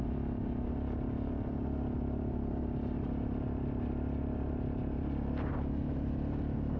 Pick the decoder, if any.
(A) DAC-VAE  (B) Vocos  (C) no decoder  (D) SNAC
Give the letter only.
C